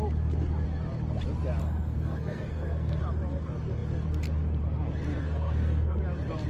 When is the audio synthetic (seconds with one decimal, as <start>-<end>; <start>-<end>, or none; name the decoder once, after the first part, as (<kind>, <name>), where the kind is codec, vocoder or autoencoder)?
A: 1.6-3.0 (codec, SNAC); 5.1-6.0